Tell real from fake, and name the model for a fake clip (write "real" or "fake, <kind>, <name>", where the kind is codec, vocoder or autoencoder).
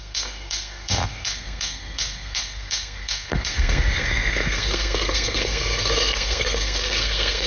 fake, codec, SNAC